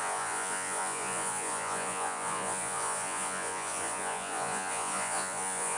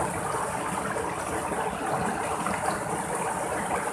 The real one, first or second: second